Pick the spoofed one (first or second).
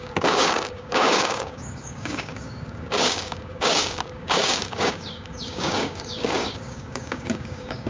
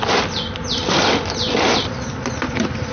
first